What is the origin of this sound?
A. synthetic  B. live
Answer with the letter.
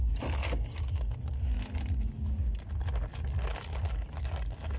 B